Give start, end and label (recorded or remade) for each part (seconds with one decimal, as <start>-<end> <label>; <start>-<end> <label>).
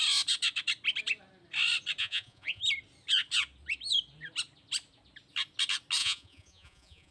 0.0-2.0 recorded; 2.0-2.6 remade; 2.6-6.0 recorded; 6.0-7.1 remade